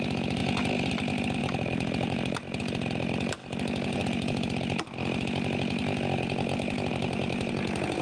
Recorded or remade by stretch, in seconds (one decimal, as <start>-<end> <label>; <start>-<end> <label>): 0.0-0.4 recorded; 0.4-0.9 remade; 0.9-1.4 recorded; 1.4-2.6 remade; 2.6-6.9 recorded; 6.9-7.5 remade; 7.5-8.0 recorded